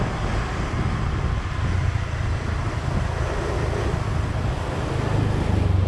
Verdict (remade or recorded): recorded